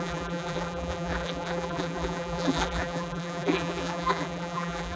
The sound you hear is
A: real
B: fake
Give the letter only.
B